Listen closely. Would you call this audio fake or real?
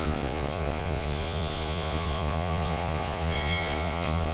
fake